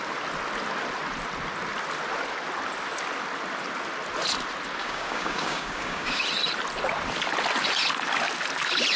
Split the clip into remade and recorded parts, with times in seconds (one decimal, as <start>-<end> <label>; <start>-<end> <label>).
0.0-4.8 recorded; 4.8-6.2 remade; 6.2-9.0 recorded